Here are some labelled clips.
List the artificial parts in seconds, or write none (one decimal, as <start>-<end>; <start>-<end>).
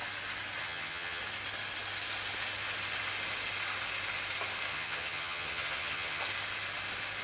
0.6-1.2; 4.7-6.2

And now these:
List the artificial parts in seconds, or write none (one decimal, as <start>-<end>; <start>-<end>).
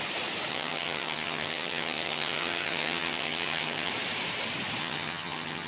0.5-3.9; 4.8-5.7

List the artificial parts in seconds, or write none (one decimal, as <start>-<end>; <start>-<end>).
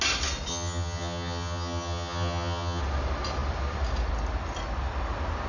0.5-2.8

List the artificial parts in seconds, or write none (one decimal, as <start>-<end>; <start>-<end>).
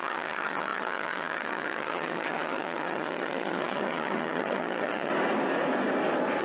0.0-5.1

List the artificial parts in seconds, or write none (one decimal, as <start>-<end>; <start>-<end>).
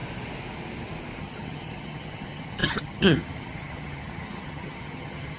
1.2-5.4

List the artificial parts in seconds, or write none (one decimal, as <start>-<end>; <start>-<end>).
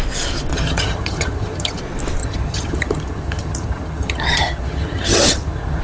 0.5-1.8; 2.2-5.8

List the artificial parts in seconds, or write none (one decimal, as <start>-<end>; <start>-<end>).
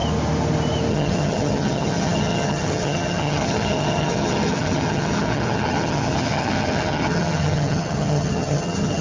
0.9-9.0